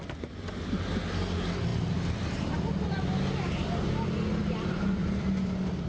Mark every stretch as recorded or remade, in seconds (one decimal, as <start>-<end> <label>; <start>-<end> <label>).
0.0-4.4 recorded; 4.4-5.2 remade; 5.2-5.9 recorded